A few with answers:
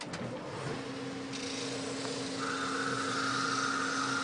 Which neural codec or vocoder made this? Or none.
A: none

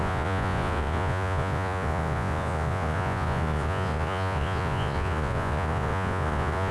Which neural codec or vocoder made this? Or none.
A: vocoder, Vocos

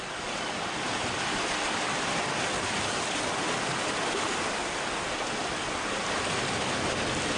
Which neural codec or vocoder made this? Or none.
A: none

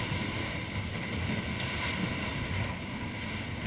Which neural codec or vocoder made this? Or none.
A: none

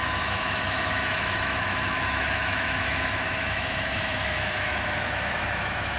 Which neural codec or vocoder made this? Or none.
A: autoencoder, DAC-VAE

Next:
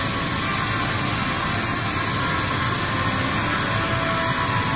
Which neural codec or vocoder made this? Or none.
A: none